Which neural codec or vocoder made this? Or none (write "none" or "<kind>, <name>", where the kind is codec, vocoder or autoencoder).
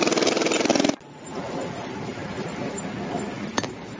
none